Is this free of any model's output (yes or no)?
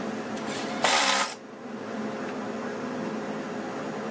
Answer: yes